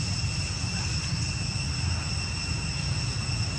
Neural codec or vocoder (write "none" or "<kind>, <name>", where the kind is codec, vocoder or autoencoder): none